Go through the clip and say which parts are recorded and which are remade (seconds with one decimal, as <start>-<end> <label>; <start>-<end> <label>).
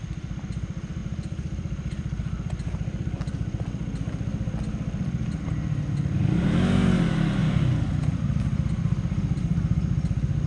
0.0-10.5 recorded